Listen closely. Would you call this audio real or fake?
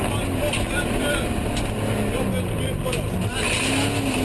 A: real